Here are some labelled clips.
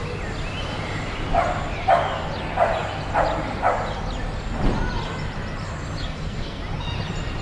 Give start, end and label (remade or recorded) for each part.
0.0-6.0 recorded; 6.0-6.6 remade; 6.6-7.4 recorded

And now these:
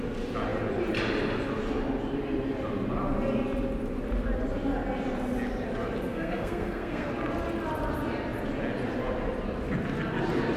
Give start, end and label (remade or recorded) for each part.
0.0-6.1 recorded; 6.1-7.1 remade; 7.1-10.6 recorded

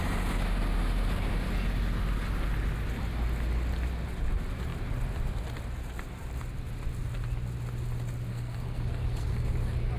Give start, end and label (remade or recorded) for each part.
0.0-8.3 recorded; 8.3-9.5 remade; 9.5-10.0 recorded

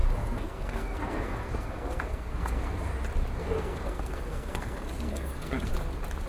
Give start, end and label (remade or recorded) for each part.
0.0-2.9 remade; 2.9-3.4 recorded; 3.4-5.7 remade; 5.7-6.3 recorded

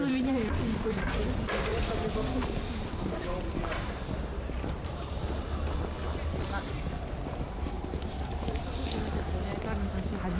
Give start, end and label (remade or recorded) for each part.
0.0-10.4 recorded

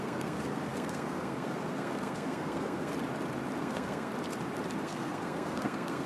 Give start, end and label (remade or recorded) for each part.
0.0-2.9 remade; 2.9-3.6 recorded; 3.6-4.1 remade; 4.1-4.8 recorded; 4.8-6.1 remade